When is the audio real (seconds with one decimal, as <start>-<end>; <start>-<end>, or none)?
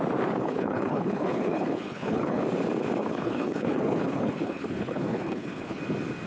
0.0-0.4; 2.4-3.0; 5.8-6.3